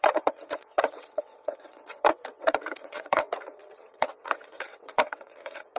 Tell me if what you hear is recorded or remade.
remade